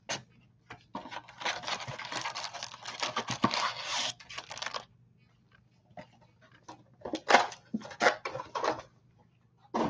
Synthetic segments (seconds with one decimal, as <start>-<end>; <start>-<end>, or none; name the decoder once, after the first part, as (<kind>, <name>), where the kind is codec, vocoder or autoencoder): none